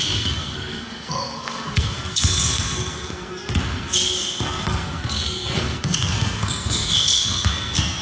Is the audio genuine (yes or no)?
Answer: no